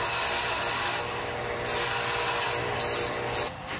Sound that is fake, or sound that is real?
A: real